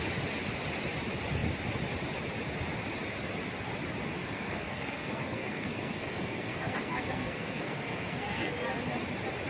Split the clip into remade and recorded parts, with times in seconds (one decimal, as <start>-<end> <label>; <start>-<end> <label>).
0.0-4.2 recorded; 4.2-8.5 remade; 8.5-9.5 recorded